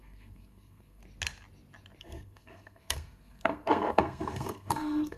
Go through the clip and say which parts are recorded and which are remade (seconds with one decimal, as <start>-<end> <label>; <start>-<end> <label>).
0.0-1.0 remade; 1.0-2.0 recorded; 2.0-5.2 remade